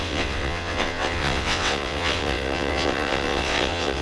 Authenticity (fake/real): fake